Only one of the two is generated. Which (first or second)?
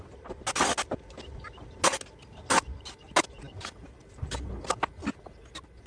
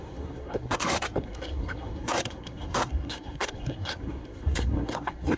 second